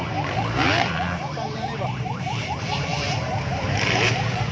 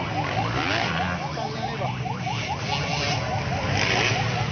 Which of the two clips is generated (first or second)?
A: first